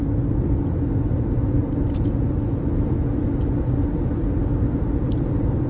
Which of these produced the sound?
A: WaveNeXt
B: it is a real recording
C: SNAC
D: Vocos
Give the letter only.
B